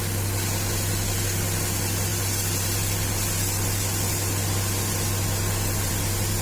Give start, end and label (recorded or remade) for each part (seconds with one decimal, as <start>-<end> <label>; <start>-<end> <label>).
0.0-6.4 recorded